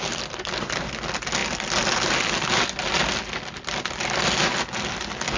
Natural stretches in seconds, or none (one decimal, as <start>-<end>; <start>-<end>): 0.0-5.4